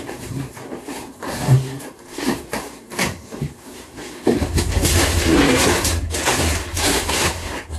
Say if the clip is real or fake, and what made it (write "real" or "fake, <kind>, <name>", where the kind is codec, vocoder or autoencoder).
fake, codec, SNAC